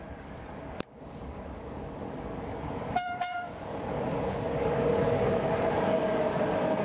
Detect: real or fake fake